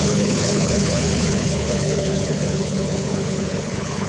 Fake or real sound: fake